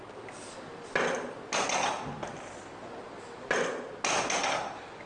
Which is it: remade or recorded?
recorded